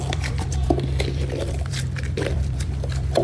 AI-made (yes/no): yes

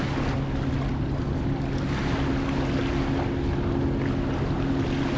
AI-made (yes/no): no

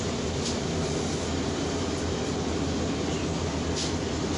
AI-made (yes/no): yes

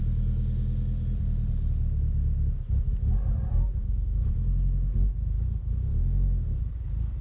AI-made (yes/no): no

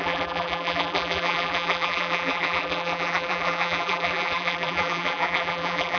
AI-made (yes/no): yes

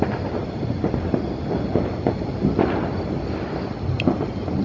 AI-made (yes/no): no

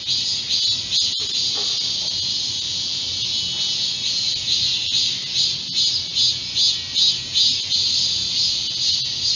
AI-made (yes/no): no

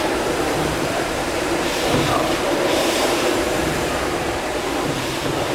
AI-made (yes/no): yes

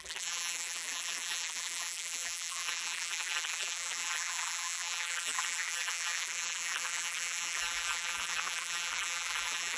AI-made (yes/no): yes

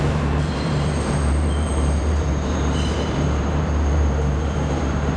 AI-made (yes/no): yes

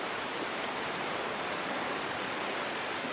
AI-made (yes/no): yes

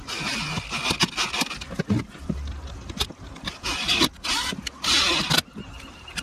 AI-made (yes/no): no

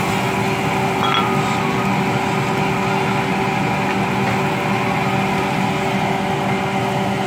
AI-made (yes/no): no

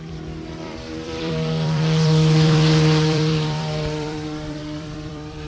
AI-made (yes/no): yes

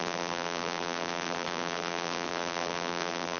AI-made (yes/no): yes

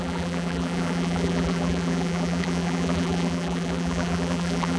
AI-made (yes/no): yes